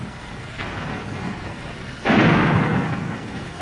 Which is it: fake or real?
fake